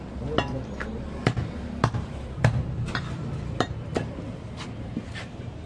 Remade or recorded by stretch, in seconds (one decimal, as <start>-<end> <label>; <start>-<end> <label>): 0.0-1.2 recorded; 1.2-4.6 remade; 4.6-5.7 recorded